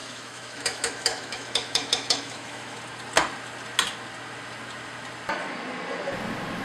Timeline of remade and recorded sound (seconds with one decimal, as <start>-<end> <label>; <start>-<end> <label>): 0.0-2.8 remade; 2.8-6.6 recorded